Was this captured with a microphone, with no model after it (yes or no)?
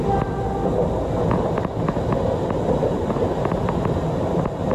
yes